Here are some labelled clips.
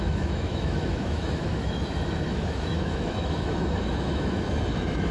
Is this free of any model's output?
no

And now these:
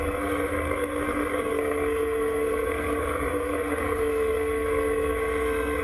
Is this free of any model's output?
no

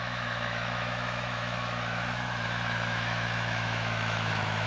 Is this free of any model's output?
no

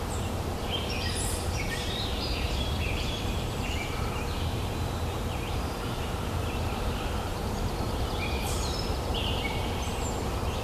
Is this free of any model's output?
no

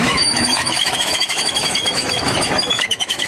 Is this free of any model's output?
no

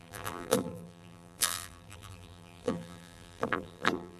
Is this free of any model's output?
no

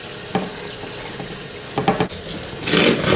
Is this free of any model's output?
yes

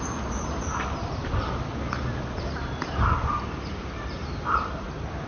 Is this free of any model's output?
no